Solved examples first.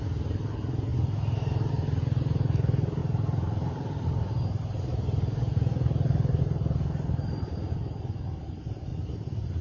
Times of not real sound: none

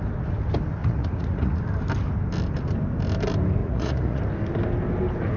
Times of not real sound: 0.8-1.6 (vocoder, Vocos); 3.6-4.2

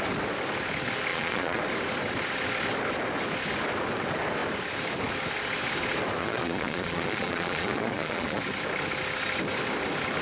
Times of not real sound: 1.1-1.6 (vocoder, Vocos); 6.2-8.4

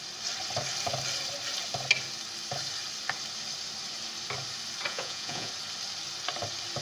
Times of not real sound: 4.9-5.5 (vocoder, Vocos)